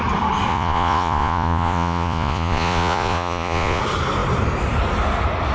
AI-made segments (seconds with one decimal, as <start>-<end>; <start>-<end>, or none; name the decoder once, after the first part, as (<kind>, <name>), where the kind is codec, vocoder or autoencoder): 0.5-3.8 (vocoder, Vocos)